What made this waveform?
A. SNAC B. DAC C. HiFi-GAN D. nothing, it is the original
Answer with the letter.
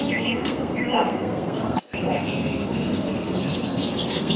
A